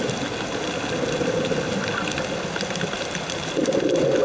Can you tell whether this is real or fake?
real